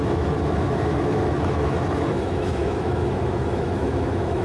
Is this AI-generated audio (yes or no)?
yes